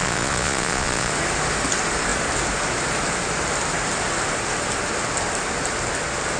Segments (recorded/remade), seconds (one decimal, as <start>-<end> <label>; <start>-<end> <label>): 0.0-1.1 remade; 1.1-6.4 recorded